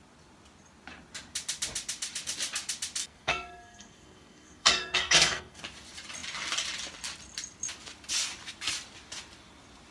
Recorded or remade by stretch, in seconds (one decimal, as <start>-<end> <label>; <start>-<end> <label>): 0.0-3.0 recorded; 3.0-5.6 remade; 5.6-9.9 recorded